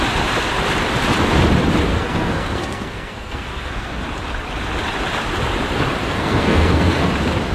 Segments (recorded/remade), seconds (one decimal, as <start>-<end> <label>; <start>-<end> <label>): 0.0-1.9 recorded; 1.9-4.0 remade; 4.0-6.0 recorded; 6.0-7.1 remade; 7.1-7.5 recorded